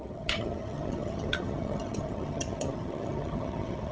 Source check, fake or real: fake